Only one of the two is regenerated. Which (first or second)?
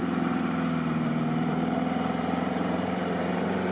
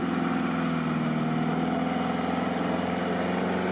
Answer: first